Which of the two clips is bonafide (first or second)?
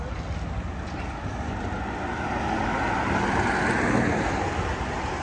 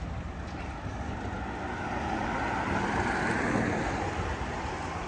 first